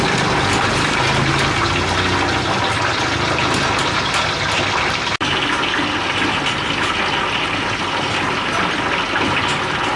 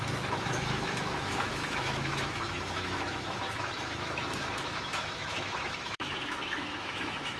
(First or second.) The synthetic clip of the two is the second